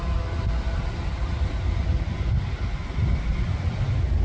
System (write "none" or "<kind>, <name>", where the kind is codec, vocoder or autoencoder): none